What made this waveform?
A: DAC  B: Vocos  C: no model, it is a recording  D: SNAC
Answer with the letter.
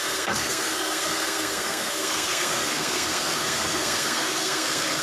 D